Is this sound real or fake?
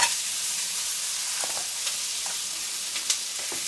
real